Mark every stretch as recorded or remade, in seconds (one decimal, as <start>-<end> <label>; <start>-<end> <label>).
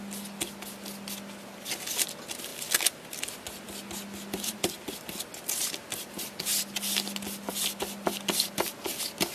0.0-9.3 recorded